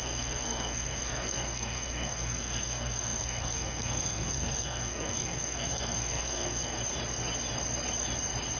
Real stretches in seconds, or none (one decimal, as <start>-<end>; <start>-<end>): 6.8-8.6